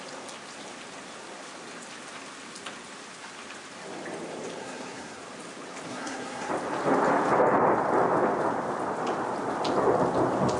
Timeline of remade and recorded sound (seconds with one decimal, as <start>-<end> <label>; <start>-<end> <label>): 0.0-4.6 recorded; 4.6-5.2 remade; 5.2-5.9 recorded; 5.9-6.5 remade; 6.5-10.6 recorded